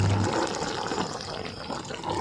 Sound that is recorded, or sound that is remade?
recorded